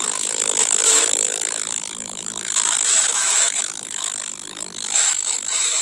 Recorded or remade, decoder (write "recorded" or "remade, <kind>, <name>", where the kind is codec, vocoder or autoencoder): remade, autoencoder, DAC-VAE